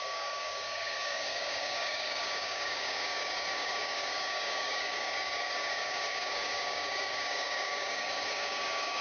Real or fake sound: fake